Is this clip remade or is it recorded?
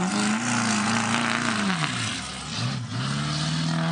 recorded